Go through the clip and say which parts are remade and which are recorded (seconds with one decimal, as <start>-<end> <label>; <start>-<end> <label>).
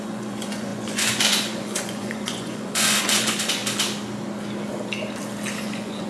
0.0-3.6 remade; 3.6-5.6 recorded; 5.6-6.1 remade